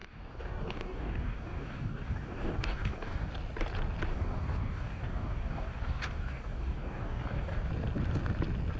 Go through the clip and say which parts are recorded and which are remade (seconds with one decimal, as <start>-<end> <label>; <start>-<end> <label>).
0.0-3.3 remade; 3.3-4.1 recorded; 4.1-7.7 remade; 7.7-8.8 recorded